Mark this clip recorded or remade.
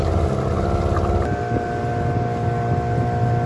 recorded